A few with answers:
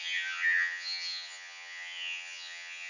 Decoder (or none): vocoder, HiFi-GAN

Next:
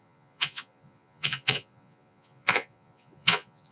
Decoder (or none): vocoder, Vocos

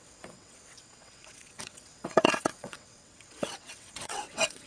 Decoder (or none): vocoder, WaveNeXt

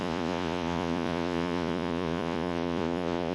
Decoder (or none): vocoder, Vocos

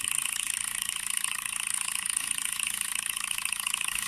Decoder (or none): codec, DAC